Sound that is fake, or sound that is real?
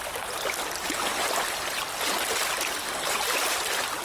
real